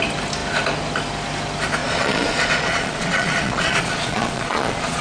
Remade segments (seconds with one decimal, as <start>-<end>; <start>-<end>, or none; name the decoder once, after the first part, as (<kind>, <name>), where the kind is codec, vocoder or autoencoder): 1.8-5.0 (vocoder, Vocos)